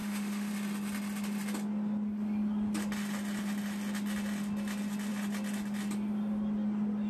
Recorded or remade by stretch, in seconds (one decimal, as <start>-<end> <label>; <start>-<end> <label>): 0.0-0.5 remade; 0.5-7.1 recorded